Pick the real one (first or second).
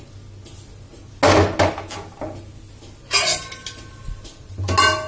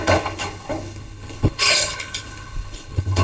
first